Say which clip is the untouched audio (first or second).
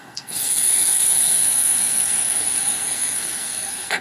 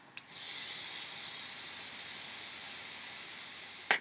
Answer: second